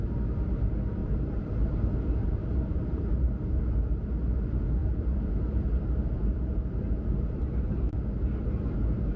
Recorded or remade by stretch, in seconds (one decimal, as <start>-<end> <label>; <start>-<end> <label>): 0.0-1.0 recorded; 1.0-3.5 remade; 3.5-4.8 recorded; 4.8-7.9 remade; 7.9-9.2 recorded